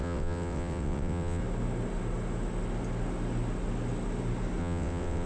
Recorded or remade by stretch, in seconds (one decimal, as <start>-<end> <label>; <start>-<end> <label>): 0.0-1.4 remade; 1.4-4.6 recorded; 4.6-5.3 remade